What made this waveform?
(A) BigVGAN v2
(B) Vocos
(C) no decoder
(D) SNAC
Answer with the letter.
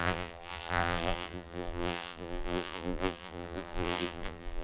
A